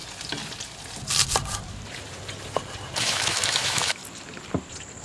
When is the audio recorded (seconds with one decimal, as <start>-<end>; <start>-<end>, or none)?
0.0-3.0; 4.0-5.0